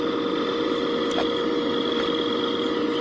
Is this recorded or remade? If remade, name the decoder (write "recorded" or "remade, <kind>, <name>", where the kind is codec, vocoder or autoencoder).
recorded